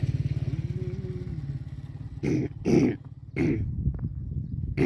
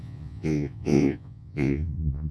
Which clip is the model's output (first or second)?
second